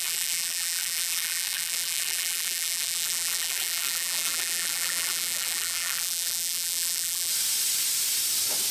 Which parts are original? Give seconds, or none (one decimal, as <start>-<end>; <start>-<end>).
7.3-8.7